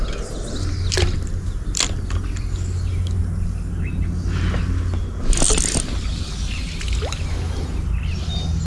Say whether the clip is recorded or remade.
recorded